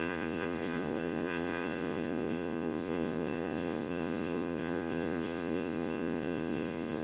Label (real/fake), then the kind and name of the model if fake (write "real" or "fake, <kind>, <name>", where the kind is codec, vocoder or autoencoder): fake, vocoder, Vocos